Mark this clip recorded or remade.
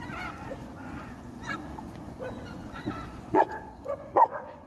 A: remade